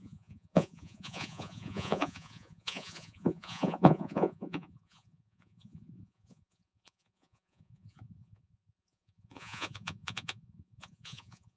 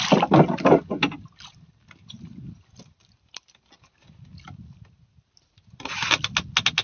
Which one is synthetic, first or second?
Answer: first